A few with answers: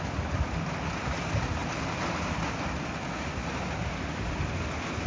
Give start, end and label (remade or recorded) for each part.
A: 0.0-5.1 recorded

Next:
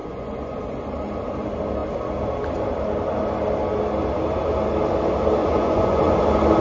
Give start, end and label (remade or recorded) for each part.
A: 0.0-0.6 remade; 0.6-5.4 recorded; 5.4-6.1 remade; 6.1-6.6 recorded

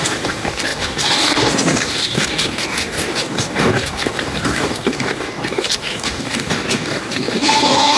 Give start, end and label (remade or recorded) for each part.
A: 0.0-8.0 remade